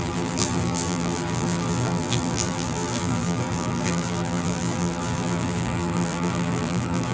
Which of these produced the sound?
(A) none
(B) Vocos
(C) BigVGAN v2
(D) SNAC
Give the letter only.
C